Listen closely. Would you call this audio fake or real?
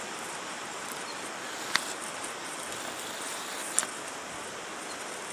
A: real